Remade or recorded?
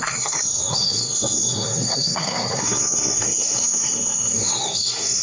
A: remade